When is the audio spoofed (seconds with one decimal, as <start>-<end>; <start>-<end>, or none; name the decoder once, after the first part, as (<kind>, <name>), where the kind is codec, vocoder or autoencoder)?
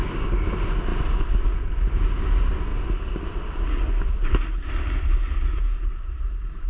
none